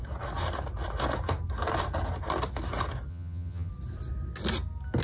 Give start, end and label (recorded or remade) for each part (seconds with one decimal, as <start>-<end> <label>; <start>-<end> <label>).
0.0-3.1 recorded; 3.1-3.7 remade; 3.7-5.0 recorded